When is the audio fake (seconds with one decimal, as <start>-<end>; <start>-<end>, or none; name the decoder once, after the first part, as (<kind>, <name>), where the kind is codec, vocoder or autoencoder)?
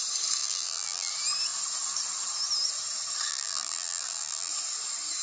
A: 0.4-1.1 (vocoder, BigVGAN v2); 3.3-4.5